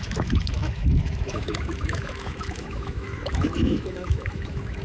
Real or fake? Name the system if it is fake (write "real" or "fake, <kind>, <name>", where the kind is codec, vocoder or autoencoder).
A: fake, autoencoder, DAC-VAE